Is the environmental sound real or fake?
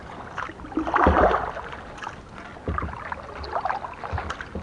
real